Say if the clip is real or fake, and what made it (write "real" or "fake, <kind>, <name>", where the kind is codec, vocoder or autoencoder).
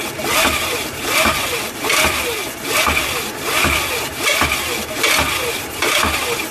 real